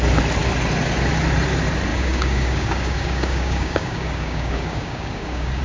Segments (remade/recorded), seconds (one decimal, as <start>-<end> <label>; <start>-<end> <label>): 0.0-1.9 recorded; 1.9-5.6 remade